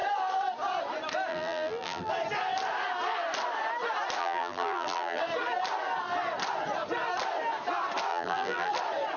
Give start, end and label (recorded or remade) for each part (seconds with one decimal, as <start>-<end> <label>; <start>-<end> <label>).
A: 0.0-1.3 recorded; 1.3-2.1 remade; 2.1-4.2 recorded; 4.2-5.2 remade; 5.2-8.1 recorded; 8.1-8.7 remade; 8.7-9.2 recorded